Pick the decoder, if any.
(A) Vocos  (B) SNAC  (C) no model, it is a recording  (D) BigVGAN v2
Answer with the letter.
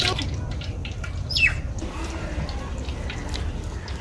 C